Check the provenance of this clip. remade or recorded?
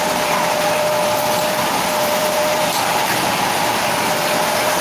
remade